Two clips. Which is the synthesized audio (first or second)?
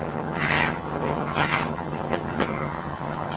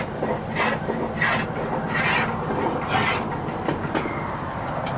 first